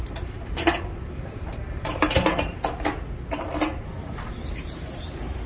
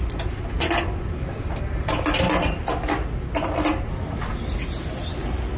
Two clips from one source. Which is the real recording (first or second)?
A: second